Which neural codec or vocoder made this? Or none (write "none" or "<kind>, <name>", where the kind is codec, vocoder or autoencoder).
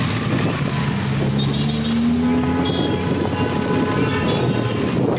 none